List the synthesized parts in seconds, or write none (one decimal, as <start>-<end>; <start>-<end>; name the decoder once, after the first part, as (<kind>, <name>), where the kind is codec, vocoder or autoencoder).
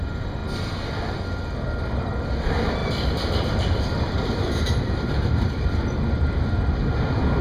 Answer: 2.8-5.5 (vocoder, BigVGAN v2)